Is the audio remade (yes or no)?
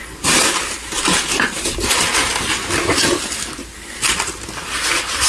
no